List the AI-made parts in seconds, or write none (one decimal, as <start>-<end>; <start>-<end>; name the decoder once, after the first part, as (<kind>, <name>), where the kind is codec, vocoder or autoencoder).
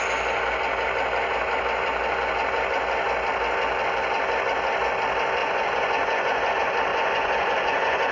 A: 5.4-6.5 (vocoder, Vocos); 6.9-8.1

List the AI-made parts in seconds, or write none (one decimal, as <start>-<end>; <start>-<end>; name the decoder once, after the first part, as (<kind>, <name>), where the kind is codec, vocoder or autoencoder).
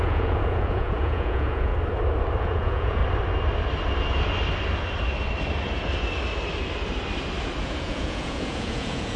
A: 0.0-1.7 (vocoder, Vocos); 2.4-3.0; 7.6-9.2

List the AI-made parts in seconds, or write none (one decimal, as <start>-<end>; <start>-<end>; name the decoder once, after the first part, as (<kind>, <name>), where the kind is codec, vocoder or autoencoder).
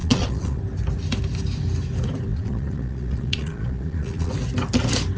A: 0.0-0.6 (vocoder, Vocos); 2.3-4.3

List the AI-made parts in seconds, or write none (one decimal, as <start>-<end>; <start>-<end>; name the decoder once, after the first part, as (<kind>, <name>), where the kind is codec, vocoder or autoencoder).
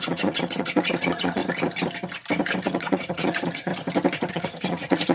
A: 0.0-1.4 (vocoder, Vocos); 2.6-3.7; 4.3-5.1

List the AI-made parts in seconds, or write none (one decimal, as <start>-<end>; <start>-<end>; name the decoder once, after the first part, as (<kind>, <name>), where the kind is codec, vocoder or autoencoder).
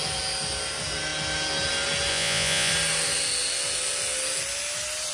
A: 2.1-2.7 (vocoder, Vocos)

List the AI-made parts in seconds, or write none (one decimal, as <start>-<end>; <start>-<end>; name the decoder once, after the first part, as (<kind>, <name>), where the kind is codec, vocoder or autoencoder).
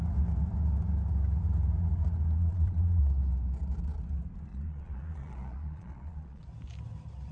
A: 2.4-3.0 (vocoder, Vocos); 4.5-6.4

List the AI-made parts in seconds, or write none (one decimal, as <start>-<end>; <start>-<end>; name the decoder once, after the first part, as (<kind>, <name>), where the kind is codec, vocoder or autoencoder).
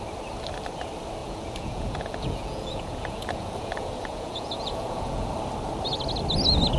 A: 1.2-5.3 (vocoder, Vocos)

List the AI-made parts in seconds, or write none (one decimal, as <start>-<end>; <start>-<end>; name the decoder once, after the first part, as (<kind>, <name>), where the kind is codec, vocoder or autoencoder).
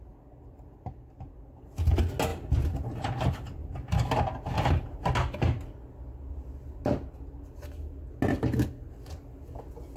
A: none